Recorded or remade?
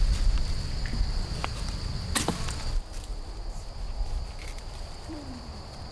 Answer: recorded